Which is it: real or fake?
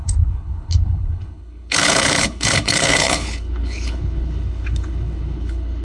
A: fake